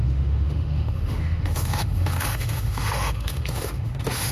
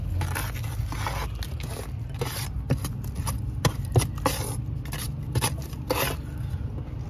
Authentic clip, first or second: second